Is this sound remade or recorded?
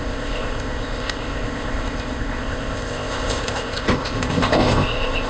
remade